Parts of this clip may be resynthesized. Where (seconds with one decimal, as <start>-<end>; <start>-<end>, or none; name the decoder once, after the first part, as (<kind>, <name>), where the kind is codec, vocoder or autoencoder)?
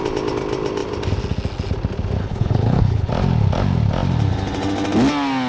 2.2-3.1 (codec, HILCodec)